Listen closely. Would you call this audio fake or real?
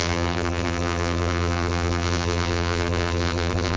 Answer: fake